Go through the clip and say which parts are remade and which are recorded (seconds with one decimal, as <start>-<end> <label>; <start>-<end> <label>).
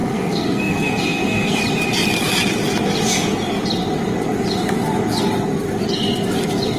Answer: 0.0-1.6 remade; 1.6-6.8 recorded